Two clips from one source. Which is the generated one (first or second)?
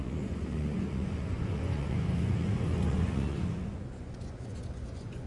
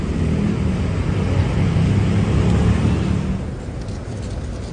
first